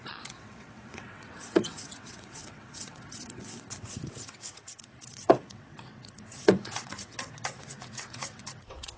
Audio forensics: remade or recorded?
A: remade